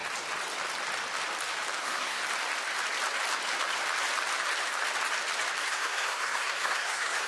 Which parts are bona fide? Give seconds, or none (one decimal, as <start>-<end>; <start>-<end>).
0.0-1.8; 2.2-5.6